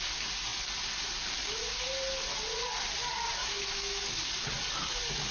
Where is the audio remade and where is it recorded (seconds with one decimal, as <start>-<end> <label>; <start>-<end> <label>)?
0.0-3.4 recorded; 3.4-4.0 remade; 4.0-5.3 recorded